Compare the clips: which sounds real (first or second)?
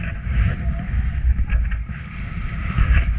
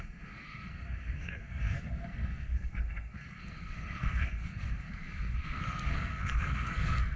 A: first